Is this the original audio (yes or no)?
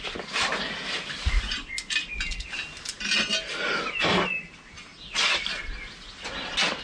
yes